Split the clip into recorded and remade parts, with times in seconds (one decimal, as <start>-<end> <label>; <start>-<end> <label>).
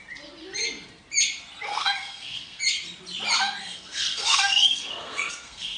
0.0-1.7 recorded; 1.7-2.6 remade; 2.6-3.6 recorded; 3.6-5.8 remade